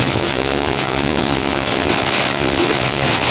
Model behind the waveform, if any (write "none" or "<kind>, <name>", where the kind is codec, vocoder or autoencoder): vocoder, WaveNeXt